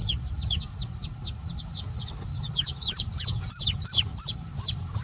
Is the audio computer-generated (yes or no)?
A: no